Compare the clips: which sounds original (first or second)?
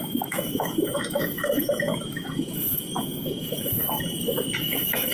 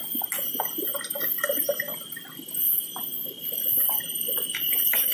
second